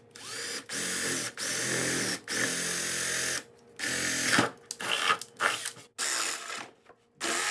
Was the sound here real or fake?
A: real